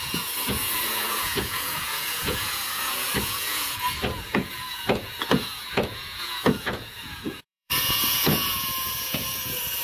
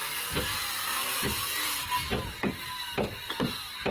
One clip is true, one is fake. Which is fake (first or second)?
first